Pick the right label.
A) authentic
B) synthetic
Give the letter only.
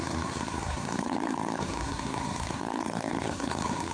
B